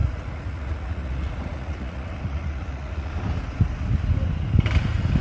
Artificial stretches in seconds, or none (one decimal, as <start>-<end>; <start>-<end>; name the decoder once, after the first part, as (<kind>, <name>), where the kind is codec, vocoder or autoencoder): 0.0-3.1 (vocoder, Vocos)